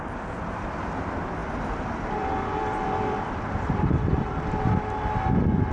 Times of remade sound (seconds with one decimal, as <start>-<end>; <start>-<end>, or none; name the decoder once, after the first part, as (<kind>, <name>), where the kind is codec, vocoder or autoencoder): 1.4-4.8 (vocoder, BigVGAN v2)